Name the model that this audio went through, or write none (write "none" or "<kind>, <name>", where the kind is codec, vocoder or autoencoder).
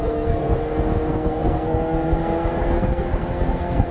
codec, SNAC